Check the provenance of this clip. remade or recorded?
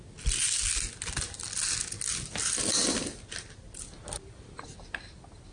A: recorded